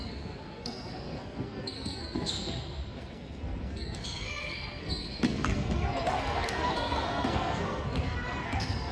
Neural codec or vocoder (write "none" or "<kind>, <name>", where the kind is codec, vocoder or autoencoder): codec, SNAC